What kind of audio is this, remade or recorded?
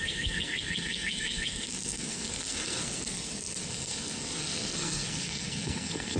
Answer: remade